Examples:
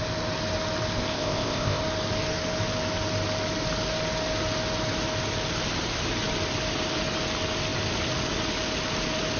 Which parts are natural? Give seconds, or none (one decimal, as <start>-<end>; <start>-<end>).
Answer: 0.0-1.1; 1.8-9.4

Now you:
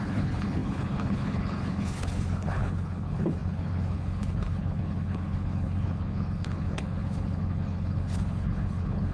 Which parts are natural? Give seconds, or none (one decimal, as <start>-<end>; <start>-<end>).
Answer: none

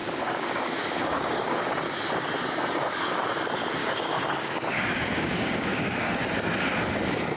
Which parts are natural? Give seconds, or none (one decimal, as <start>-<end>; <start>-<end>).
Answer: 1.6-3.8; 6.1-7.4